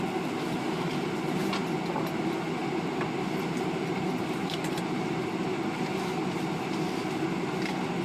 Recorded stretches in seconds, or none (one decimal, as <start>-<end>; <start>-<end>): 0.0-2.6; 5.2-8.0